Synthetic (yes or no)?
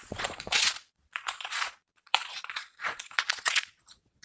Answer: yes